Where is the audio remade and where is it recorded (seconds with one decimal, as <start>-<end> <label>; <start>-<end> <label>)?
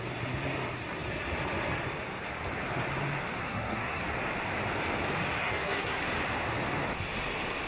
0.0-3.4 recorded; 3.4-4.0 remade; 4.0-5.4 recorded; 5.4-6.0 remade; 6.0-7.7 recorded